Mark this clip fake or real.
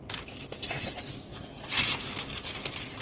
real